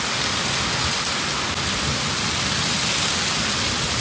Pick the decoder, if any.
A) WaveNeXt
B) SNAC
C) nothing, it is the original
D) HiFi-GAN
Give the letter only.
C